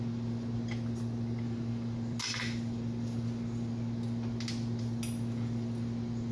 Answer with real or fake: real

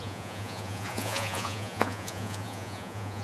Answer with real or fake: fake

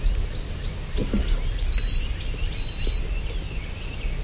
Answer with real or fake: real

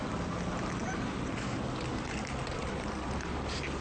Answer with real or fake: real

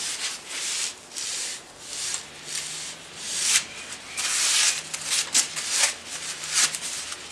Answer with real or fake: real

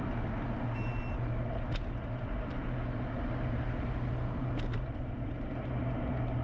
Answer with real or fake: real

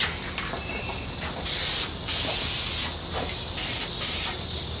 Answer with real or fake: real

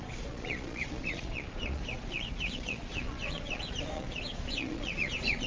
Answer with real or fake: fake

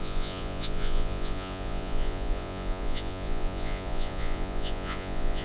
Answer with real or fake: fake